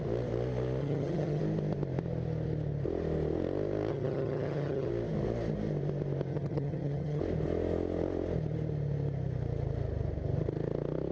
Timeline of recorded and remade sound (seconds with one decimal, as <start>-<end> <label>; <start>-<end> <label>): 0.0-0.8 recorded; 0.8-1.4 remade; 1.4-3.9 recorded; 3.9-4.9 remade; 4.9-6.3 recorded; 6.3-7.2 remade; 7.2-11.1 recorded